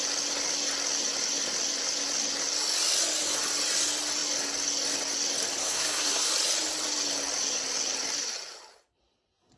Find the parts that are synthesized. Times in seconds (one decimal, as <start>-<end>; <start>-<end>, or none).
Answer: 5.6-6.3